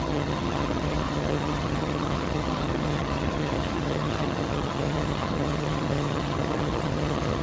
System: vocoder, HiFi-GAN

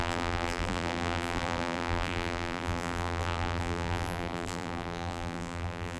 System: vocoder, BigVGAN v2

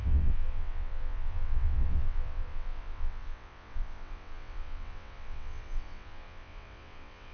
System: vocoder, WaveNeXt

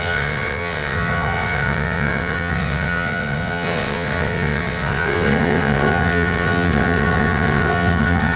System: vocoder, WaveNeXt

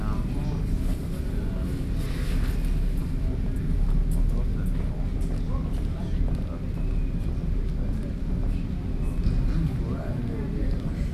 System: none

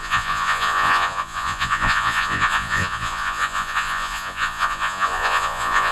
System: vocoder, Vocos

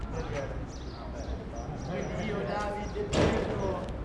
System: none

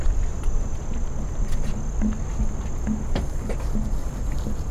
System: none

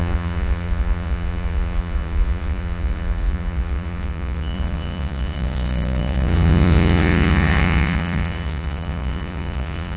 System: vocoder, Vocos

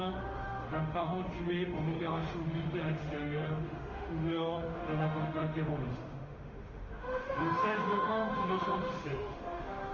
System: autoencoder, DAC-VAE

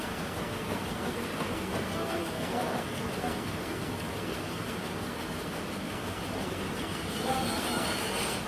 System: codec, SNAC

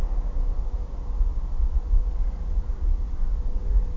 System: none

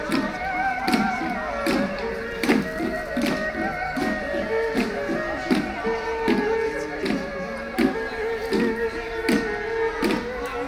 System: none